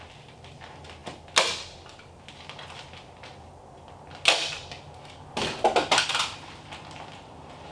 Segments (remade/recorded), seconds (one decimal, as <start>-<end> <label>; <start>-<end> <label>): 0.0-7.7 recorded